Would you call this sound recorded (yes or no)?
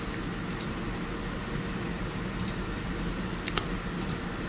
yes